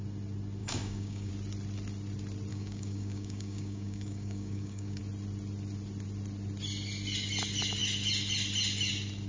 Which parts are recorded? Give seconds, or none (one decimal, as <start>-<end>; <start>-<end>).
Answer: 0.0-0.6; 1.3-2.5; 5.0-9.3

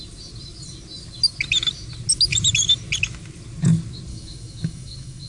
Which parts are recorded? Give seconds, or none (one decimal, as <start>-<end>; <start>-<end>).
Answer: 0.0-4.1

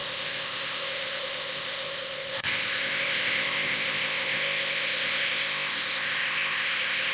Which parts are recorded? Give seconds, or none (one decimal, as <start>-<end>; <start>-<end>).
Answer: none

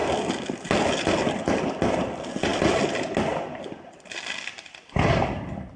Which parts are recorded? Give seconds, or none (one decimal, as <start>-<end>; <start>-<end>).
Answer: 0.0-5.8

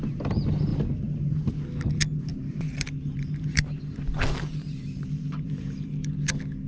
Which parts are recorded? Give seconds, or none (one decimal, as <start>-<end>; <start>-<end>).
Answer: 0.0-0.7; 1.5-2.3; 6.3-6.7

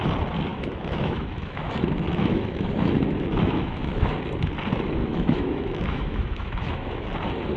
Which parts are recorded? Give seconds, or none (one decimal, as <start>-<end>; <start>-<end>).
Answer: 0.0-0.5; 4.1-5.0; 7.1-7.6

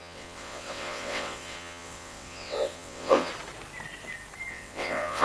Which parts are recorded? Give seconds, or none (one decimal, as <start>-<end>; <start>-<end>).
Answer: 3.3-4.5